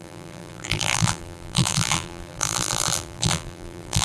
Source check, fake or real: fake